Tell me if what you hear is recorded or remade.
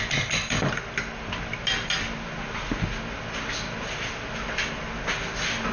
recorded